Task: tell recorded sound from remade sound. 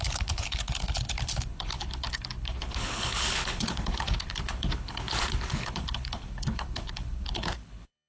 remade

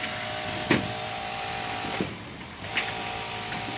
recorded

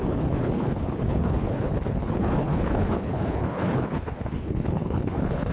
remade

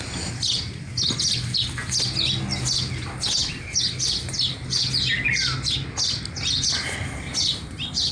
recorded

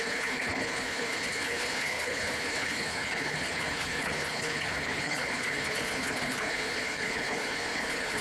remade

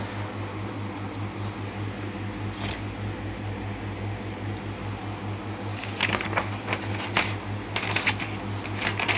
recorded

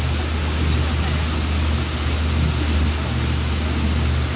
recorded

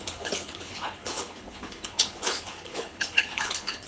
remade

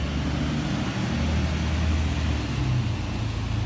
recorded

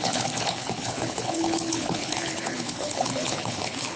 remade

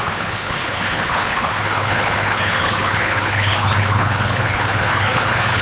remade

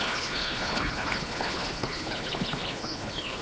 remade